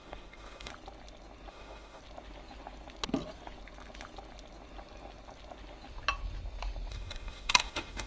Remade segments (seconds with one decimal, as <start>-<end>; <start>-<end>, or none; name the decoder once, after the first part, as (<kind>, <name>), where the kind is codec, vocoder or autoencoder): 0.0-0.7 (autoencoder, DAC-VAE); 1.5-2.0; 6.9-8.1